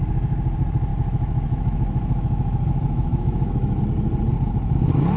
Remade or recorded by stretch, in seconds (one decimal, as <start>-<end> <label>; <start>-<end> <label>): 0.0-0.9 recorded; 0.9-3.8 remade; 3.8-5.2 recorded